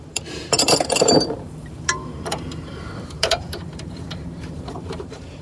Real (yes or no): no